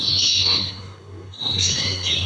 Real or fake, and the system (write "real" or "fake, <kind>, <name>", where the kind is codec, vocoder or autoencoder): fake, codec, SNAC